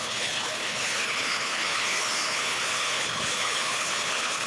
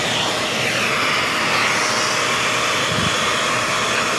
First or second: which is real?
second